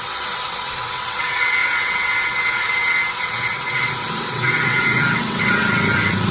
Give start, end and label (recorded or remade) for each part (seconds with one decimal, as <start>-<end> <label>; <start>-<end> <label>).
0.0-6.3 remade